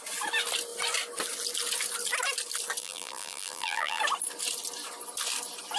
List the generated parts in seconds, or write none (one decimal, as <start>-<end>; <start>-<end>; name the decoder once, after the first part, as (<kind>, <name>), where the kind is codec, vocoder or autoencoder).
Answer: 2.8-4.0 (vocoder, BigVGAN v2)